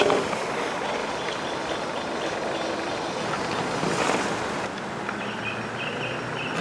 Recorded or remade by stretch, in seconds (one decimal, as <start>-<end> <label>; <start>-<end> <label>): 0.0-1.0 recorded; 1.0-4.0 remade; 4.0-6.6 recorded